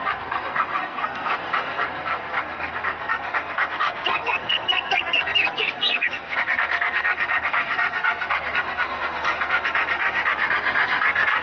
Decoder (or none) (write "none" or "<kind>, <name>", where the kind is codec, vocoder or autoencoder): codec, SNAC